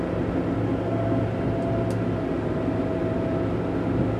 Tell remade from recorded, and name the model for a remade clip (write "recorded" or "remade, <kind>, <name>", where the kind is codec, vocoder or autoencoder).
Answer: recorded